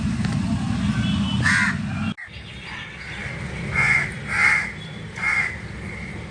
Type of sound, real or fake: real